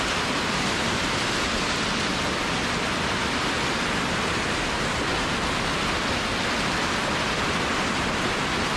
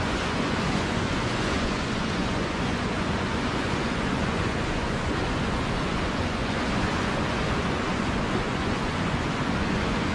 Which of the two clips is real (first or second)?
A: first